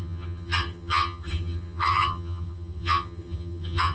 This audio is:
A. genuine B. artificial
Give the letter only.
B